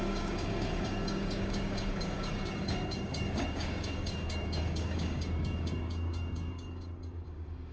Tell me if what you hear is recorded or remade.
remade